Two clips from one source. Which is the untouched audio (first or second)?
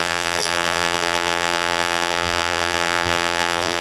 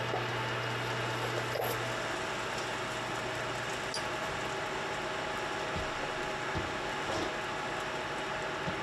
second